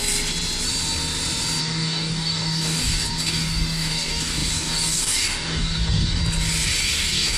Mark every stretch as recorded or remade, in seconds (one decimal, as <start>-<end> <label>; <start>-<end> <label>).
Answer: 0.0-1.6 recorded; 1.6-6.2 remade; 6.2-6.8 recorded; 6.8-7.4 remade